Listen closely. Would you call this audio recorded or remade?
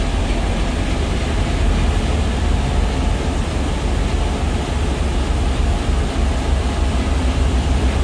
recorded